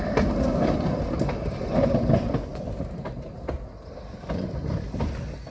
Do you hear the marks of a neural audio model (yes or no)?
no